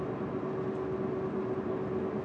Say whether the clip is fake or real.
real